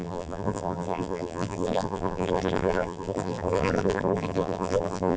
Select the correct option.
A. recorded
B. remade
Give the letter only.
B